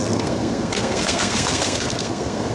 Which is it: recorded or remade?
remade